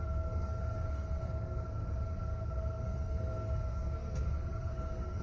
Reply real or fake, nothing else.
fake